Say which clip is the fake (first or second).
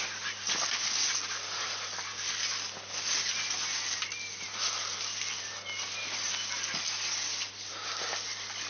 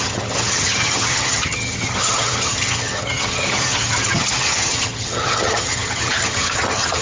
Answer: second